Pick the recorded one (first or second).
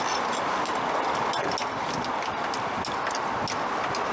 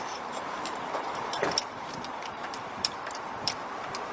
first